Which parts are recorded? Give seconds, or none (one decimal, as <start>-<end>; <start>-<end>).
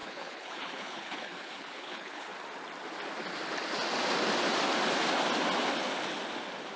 2.3-6.8